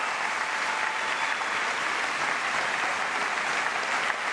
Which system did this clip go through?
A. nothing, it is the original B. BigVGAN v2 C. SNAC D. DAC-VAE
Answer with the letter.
A